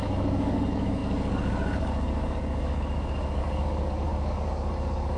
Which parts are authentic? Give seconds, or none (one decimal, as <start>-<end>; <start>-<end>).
none